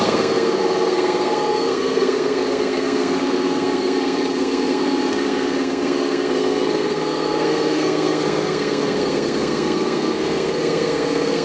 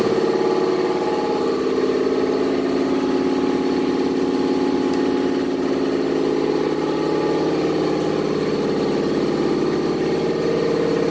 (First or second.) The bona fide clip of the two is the second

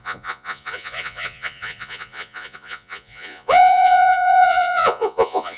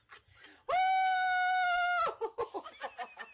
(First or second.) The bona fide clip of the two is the second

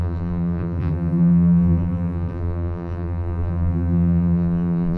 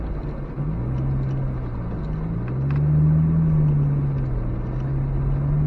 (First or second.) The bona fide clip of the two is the second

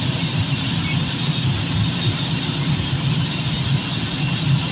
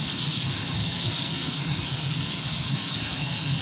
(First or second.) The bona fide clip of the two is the first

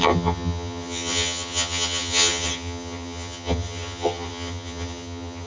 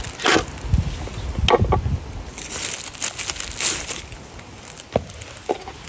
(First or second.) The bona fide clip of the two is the second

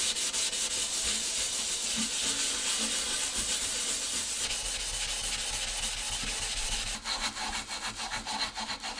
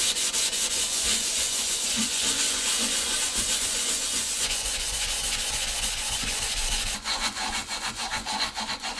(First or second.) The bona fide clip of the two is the first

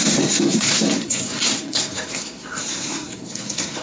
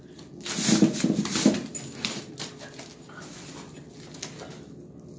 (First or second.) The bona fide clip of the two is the second